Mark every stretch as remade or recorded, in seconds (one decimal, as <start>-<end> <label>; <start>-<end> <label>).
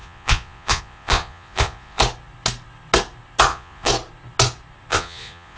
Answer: 0.0-2.0 remade; 2.0-3.5 recorded; 3.5-3.9 remade; 3.9-4.9 recorded; 4.9-5.6 remade